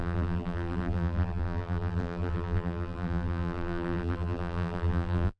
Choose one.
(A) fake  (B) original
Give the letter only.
A